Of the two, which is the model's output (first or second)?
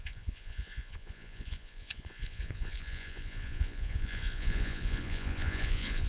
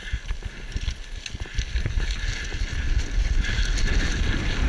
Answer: first